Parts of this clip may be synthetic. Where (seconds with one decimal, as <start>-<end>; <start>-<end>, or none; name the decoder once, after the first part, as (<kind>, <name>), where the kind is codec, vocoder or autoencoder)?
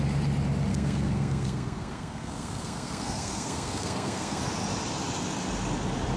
0.7-4.4 (codec, SNAC)